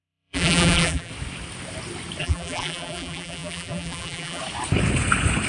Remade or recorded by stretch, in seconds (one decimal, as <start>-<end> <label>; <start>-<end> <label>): 0.0-1.1 remade; 1.1-2.2 recorded; 2.2-4.4 remade; 4.4-5.5 recorded